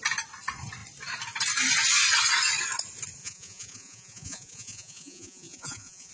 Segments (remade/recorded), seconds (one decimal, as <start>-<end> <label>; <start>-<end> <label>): 0.0-3.2 recorded; 3.2-6.1 remade